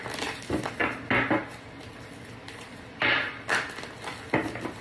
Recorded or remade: recorded